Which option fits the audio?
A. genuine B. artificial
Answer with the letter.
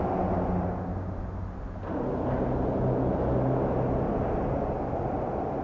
A